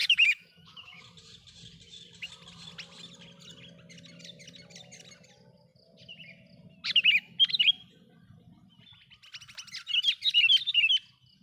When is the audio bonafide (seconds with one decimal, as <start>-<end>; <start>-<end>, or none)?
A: 1.0-11.4